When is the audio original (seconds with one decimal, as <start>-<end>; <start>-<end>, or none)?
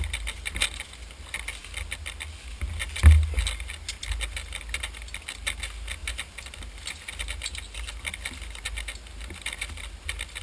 0.0-10.4